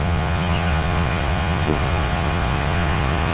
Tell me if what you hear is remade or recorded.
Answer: remade